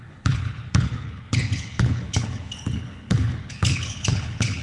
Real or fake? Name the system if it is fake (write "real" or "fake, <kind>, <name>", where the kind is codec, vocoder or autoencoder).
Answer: fake, codec, HILCodec